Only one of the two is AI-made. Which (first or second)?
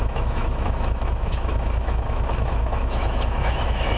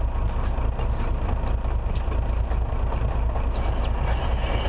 first